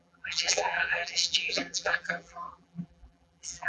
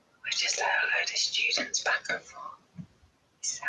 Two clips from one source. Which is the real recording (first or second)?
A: second